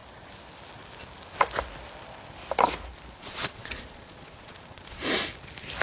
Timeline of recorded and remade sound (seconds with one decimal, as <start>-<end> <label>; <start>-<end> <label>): 0.0-3.2 recorded; 3.2-5.0 remade; 5.0-5.8 recorded